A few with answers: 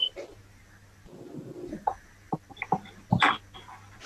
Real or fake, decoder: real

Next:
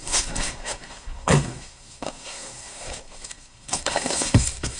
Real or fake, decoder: fake, codec, SNAC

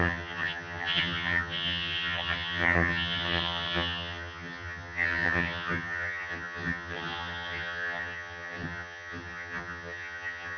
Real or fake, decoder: fake, vocoder, HiFi-GAN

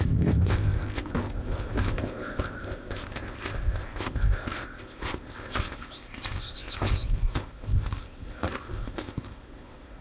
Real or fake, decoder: fake, codec, ZipCodec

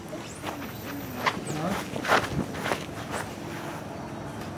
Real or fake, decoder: real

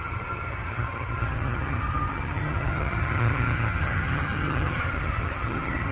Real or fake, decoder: fake, vocoder, HiFi-GAN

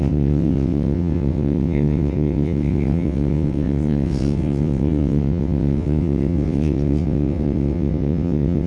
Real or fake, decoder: fake, vocoder, WaveNeXt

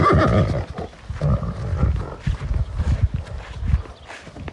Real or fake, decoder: real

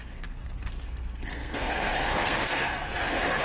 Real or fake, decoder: fake, codec, SNAC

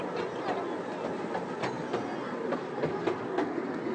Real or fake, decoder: real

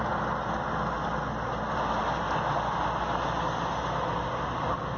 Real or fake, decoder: real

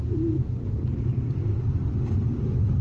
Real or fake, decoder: real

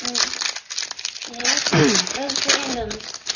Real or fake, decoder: real